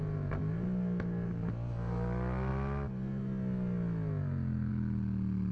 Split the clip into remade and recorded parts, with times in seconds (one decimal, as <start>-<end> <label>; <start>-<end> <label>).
0.0-5.5 recorded